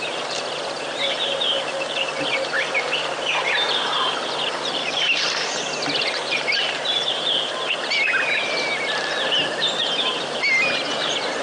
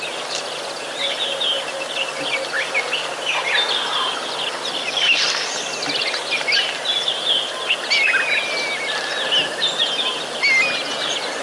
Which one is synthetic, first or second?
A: first